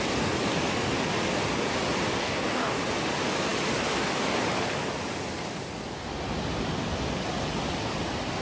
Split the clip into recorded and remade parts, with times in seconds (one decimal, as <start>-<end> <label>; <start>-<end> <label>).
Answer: 0.0-2.2 recorded; 2.2-2.8 remade; 2.8-8.4 recorded